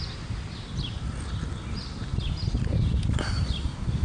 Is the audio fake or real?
real